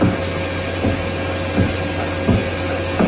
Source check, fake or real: real